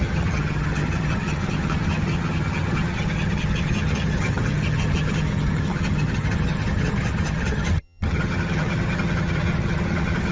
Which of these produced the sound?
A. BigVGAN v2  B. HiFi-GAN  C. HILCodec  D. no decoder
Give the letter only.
B